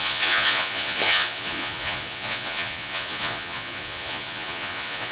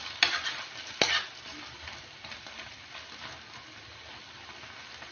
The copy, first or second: first